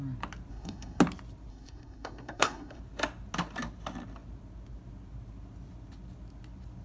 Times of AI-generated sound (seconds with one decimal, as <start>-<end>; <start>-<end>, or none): 0.5-1.0; 1.5-2.8